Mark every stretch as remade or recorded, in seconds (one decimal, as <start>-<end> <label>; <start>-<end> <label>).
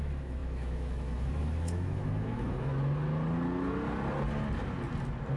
0.0-2.7 remade; 2.7-5.4 recorded